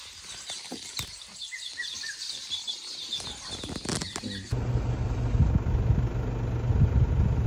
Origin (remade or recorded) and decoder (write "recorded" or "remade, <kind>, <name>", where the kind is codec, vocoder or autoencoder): recorded